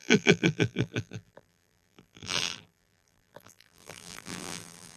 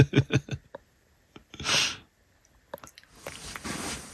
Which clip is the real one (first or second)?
second